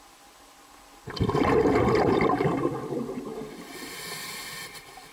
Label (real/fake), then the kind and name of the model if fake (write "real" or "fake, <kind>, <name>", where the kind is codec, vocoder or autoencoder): fake, vocoder, BigVGAN v2